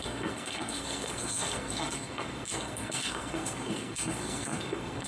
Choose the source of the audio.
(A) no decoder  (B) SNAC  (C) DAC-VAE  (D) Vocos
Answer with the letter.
B